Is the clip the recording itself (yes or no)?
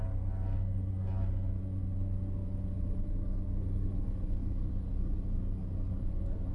yes